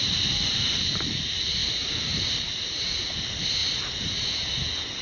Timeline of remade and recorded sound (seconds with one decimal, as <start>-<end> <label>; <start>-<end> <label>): 0.0-3.6 remade; 3.6-5.0 recorded